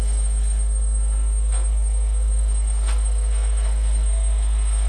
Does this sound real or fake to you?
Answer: fake